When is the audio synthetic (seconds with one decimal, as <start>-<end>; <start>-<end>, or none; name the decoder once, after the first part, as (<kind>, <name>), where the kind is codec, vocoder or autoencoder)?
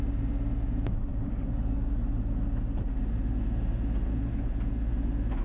none